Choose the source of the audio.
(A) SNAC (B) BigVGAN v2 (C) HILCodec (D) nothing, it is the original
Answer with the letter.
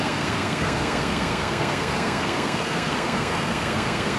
A